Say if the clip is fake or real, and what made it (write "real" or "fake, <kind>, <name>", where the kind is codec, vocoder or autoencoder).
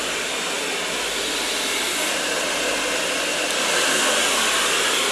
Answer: real